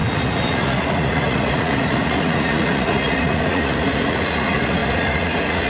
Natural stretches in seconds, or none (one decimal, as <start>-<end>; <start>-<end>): none